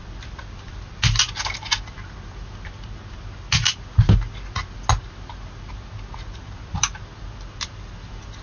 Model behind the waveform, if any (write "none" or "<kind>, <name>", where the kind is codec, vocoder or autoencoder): none